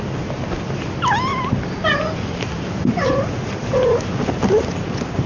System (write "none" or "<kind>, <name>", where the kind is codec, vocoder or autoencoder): none